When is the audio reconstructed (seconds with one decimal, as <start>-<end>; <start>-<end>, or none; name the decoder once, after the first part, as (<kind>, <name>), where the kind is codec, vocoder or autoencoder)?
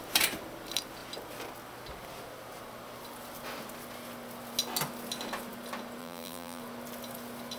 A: 6.0-6.6 (vocoder, BigVGAN v2)